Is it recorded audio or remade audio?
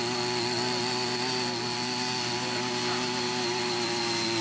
recorded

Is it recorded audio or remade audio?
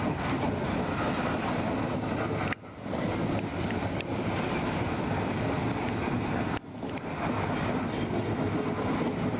recorded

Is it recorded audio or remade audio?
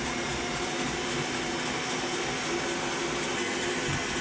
recorded